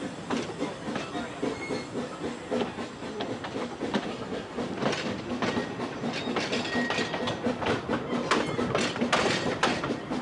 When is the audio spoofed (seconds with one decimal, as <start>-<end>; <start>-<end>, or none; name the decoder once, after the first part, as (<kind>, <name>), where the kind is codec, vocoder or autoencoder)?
4.1-4.6 (codec, SNAC)